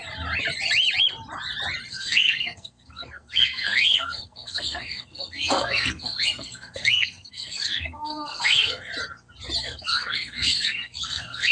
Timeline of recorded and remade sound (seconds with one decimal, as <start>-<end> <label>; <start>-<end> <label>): 0.0-1.9 recorded; 1.9-8.9 remade; 8.9-9.6 recorded; 9.6-11.5 remade